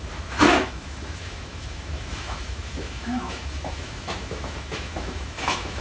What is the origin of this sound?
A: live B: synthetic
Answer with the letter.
B